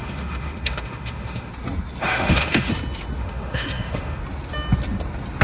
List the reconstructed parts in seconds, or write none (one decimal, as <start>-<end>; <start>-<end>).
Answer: 0.0-1.5; 2.0-2.7; 3.2-4.2